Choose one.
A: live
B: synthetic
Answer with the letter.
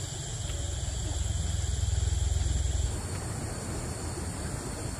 A